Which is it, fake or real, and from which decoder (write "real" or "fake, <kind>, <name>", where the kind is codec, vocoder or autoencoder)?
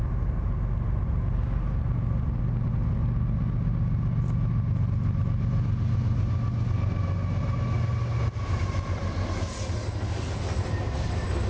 real